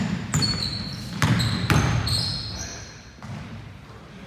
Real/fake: real